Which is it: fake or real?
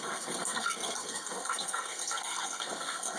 fake